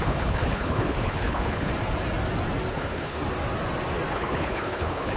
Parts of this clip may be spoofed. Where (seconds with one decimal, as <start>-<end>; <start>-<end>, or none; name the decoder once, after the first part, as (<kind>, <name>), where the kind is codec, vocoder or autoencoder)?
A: 0.0-1.7 (codec, HILCodec); 2.7-3.2; 4.1-5.2